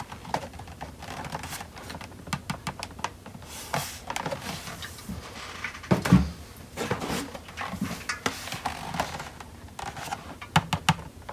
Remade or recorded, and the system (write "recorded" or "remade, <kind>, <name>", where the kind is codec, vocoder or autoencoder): recorded